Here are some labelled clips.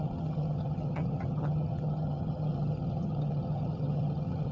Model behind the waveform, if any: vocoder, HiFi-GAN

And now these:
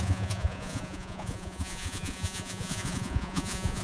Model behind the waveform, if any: vocoder, Vocos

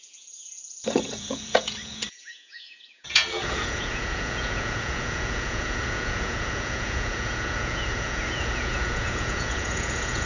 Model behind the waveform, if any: vocoder, Vocos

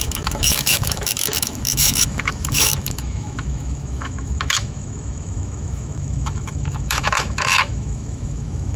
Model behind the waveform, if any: autoencoder, DAC-VAE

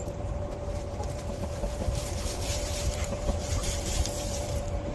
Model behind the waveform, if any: vocoder, BigVGAN v2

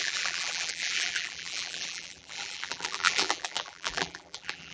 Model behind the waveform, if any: vocoder, BigVGAN v2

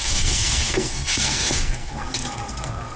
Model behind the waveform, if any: codec, SNAC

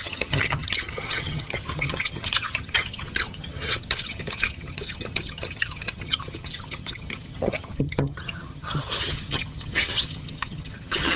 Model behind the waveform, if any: vocoder, HiFi-GAN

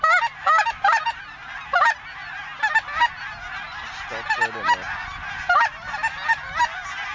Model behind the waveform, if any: none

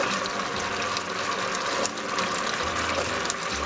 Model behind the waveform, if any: none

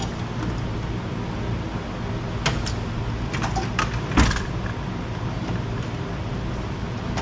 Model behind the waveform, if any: none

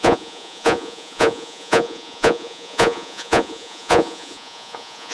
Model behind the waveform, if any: vocoder, Vocos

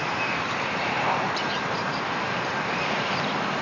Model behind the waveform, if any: vocoder, BigVGAN v2